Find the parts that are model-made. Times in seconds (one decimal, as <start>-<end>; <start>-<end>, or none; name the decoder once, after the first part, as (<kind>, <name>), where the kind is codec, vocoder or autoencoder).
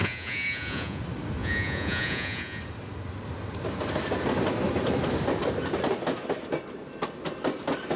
0.0-1.0 (vocoder, Vocos); 1.4-2.6